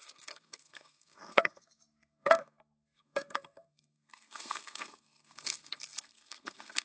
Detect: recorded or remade remade